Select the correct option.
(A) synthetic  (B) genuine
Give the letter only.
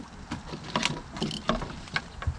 B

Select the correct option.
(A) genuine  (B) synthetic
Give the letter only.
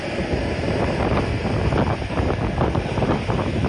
A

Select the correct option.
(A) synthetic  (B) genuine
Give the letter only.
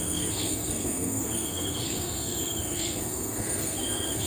A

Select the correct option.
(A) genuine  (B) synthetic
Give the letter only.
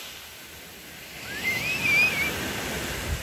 A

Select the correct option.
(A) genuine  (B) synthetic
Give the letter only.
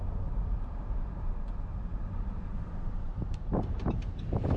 B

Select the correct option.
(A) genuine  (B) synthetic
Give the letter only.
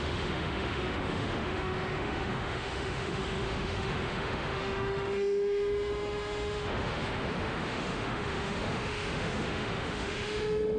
B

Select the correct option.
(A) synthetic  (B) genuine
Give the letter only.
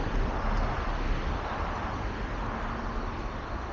B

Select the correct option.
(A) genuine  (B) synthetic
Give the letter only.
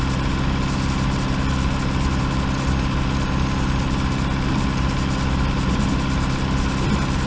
A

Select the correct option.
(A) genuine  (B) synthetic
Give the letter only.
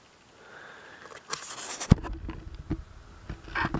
A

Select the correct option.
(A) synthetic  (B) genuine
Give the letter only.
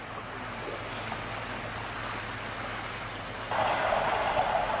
B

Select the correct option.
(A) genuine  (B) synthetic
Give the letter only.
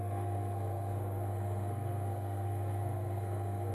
B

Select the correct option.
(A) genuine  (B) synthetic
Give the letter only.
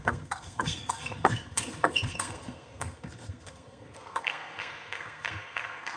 B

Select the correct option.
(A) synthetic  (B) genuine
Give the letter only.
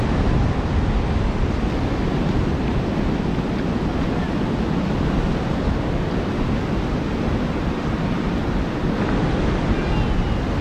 B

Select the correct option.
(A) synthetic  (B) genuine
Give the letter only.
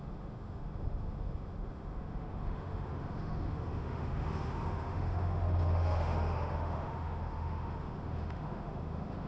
A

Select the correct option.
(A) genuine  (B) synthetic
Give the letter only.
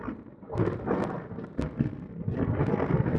A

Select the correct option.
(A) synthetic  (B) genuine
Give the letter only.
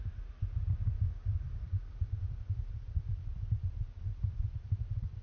B